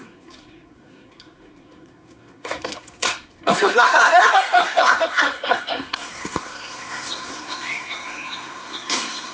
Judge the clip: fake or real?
fake